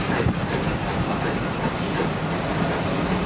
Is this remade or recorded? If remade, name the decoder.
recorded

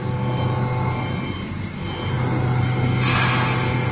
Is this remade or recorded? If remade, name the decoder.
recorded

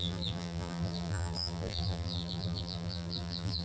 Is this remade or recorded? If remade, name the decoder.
remade, vocoder, BigVGAN v2